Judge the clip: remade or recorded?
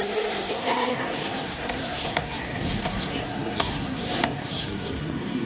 remade